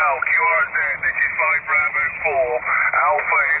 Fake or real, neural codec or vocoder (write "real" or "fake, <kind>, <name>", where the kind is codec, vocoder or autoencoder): fake, vocoder, BigVGAN v2